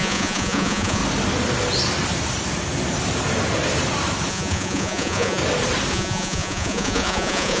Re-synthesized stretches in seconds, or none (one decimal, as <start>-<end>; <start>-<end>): 0.0-1.0; 4.3-5.4; 5.9-7.6